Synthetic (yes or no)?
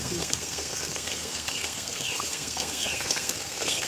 yes